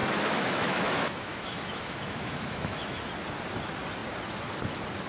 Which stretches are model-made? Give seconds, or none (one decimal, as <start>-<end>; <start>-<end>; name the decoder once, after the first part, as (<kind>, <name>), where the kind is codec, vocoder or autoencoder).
0.0-3.1 (autoencoder, DAC-VAE)